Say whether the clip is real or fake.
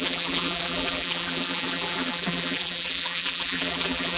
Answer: fake